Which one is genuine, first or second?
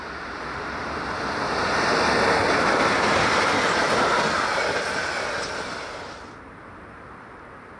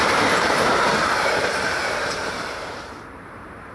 first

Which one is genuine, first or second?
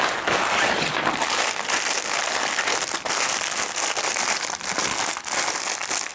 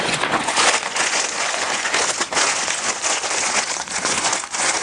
first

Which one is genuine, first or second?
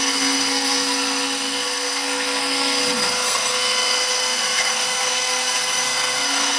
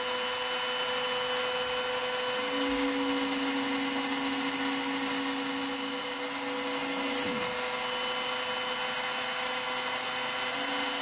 second